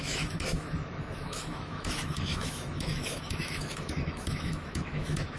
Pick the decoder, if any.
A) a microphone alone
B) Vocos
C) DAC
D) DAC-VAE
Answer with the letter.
D